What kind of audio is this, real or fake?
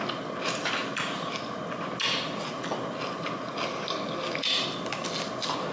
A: real